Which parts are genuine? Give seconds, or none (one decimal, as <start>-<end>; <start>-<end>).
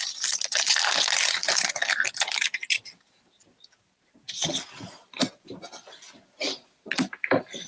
0.0-7.7